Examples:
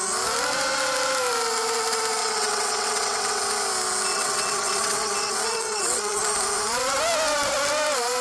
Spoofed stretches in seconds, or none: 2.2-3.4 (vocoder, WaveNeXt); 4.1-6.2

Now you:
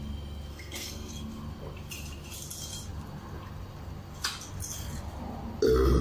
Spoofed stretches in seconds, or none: 0.5-1.1 (codec, SNAC)

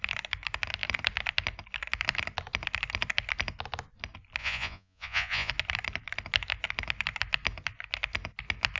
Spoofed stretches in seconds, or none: 4.4-5.5 (vocoder, Vocos)